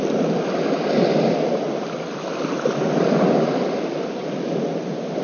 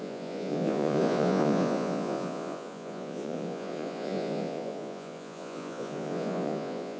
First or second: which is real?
first